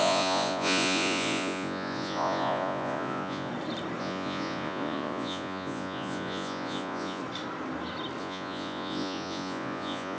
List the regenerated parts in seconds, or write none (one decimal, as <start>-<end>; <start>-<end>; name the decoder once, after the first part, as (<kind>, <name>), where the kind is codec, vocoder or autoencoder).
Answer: 0.0-3.5 (vocoder, Vocos); 4.0-7.2; 8.2-10.2